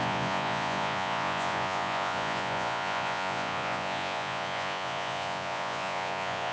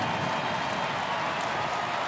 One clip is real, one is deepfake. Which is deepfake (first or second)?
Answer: first